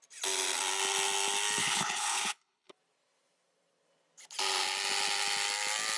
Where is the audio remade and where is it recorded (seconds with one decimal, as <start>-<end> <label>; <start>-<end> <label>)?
0.0-1.6 recorded; 1.6-2.7 remade; 2.7-6.0 recorded